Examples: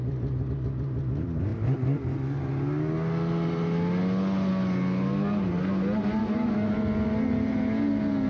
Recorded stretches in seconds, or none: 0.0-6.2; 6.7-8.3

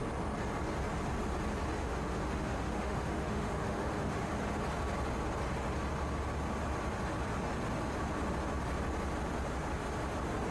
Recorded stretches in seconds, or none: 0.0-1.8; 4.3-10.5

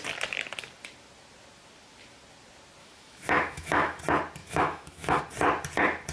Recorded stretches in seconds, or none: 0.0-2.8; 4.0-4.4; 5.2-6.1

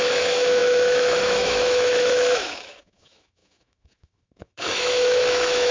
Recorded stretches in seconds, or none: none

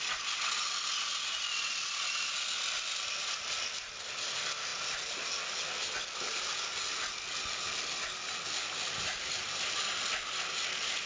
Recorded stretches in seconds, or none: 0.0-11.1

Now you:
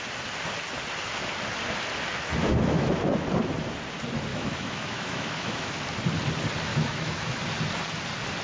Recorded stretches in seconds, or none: 0.0-2.5; 3.0-4.3; 5.8-6.7; 7.3-8.4

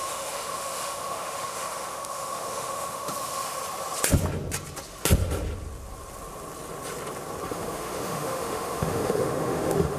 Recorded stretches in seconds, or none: 3.6-7.5